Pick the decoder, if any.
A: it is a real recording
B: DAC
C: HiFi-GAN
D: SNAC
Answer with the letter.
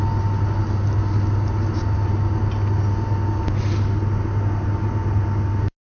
A